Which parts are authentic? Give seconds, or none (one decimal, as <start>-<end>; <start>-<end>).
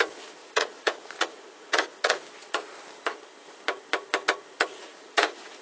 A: 0.0-0.4; 2.2-4.7